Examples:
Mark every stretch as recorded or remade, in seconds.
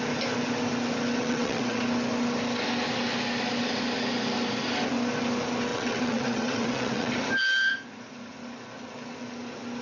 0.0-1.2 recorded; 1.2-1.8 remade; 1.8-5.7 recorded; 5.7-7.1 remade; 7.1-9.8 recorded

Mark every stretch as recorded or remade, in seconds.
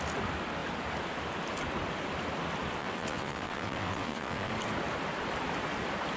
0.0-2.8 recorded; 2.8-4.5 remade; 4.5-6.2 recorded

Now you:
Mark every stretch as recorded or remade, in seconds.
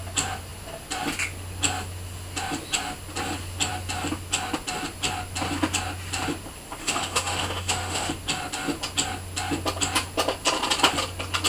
0.0-6.8 recorded; 6.8-8.1 remade; 8.1-11.5 recorded